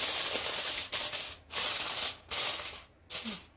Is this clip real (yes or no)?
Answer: yes